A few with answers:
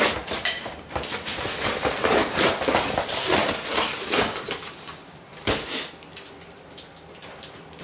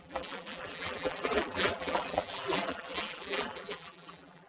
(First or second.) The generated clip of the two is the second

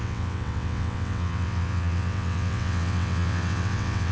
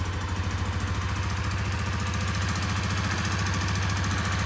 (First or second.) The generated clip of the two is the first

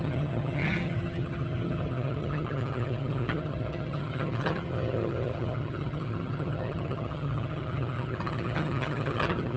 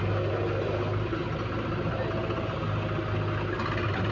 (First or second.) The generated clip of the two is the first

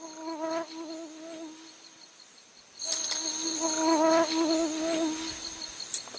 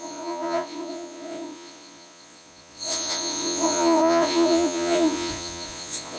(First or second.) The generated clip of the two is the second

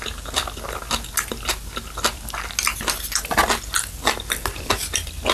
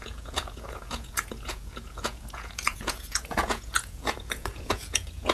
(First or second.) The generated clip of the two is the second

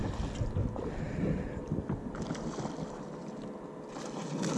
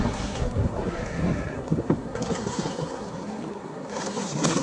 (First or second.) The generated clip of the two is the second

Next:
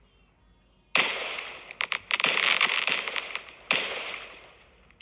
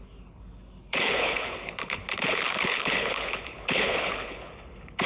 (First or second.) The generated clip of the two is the second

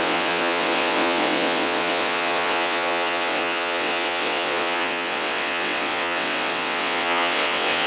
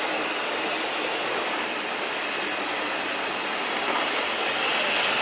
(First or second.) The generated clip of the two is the first